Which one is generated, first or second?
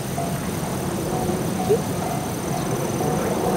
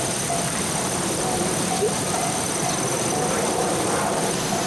second